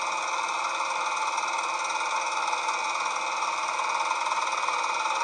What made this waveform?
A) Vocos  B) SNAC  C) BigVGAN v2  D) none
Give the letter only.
D